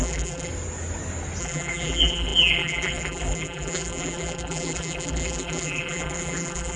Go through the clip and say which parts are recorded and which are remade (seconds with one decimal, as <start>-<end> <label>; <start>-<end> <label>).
0.0-0.5 remade; 0.5-1.4 recorded; 1.4-6.8 remade